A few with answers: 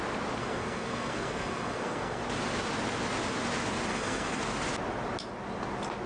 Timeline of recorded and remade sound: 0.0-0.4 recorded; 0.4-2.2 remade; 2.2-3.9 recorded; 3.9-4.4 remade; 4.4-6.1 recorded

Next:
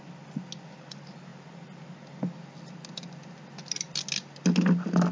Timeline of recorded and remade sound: 0.0-5.1 recorded

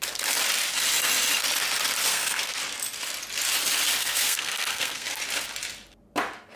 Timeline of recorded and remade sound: 0.0-2.1 recorded; 2.1-2.6 remade; 2.6-4.0 recorded; 4.0-5.2 remade; 5.2-6.6 recorded

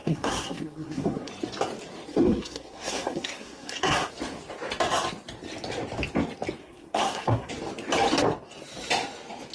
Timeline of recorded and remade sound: 0.0-1.3 remade; 1.3-2.1 recorded; 2.1-4.1 remade; 4.1-6.6 recorded; 6.6-7.5 remade; 7.5-9.5 recorded

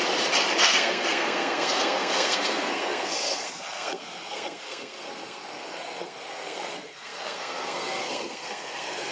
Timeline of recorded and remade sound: 0.0-0.6 recorded; 0.6-9.1 remade